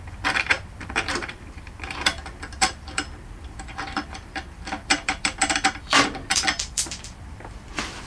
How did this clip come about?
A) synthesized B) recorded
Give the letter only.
A